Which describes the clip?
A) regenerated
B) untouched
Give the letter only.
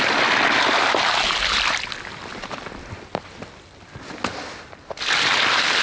B